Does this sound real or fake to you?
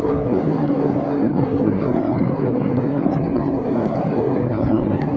fake